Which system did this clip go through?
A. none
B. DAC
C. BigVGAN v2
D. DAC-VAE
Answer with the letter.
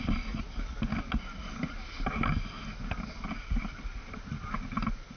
A